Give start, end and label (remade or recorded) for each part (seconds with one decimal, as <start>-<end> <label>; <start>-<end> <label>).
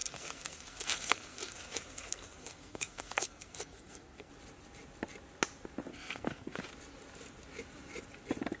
0.0-4.3 remade; 4.3-5.9 recorded; 5.9-6.6 remade; 6.6-8.6 recorded